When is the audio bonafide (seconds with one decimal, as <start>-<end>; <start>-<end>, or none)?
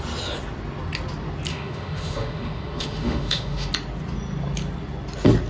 0.0-1.5; 3.7-5.5